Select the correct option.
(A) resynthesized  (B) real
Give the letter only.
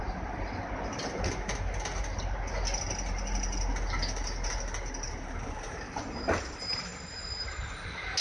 B